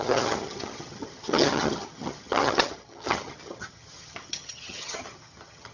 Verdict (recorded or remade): remade